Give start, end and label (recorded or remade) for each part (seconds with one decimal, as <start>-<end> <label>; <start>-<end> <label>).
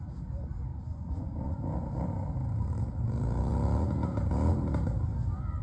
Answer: 0.0-0.7 recorded; 0.7-1.6 remade; 1.6-5.6 recorded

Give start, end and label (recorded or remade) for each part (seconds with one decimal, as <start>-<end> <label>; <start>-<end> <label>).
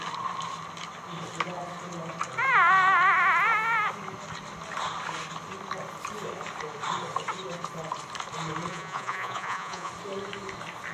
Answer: 0.0-8.7 recorded; 8.7-9.9 remade; 9.9-10.9 recorded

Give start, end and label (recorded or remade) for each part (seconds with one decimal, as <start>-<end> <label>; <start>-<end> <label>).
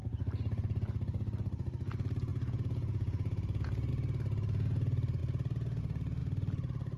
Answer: 0.0-2.3 recorded; 2.3-3.9 remade; 3.9-7.0 recorded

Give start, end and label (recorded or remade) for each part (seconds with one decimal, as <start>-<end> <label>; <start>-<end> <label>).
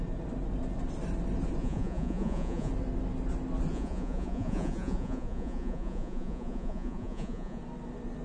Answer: 0.0-1.6 recorded; 1.6-2.7 remade; 2.7-3.7 recorded; 3.7-7.6 remade; 7.6-8.2 recorded